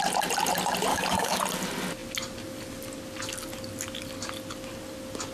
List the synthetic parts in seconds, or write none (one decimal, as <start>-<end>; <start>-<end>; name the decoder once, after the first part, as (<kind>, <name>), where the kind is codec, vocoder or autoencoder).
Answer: 0.9-1.4 (codec, DAC)